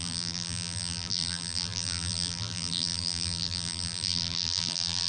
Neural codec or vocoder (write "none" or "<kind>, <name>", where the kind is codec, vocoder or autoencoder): vocoder, BigVGAN v2